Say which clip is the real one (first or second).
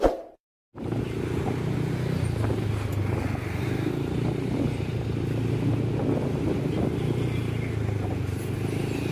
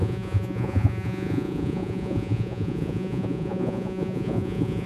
first